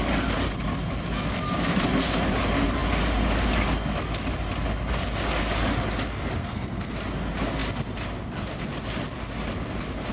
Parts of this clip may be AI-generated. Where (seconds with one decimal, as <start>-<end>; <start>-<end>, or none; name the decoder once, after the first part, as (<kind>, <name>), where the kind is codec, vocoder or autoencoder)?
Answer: 6.4-6.9 (codec, SNAC)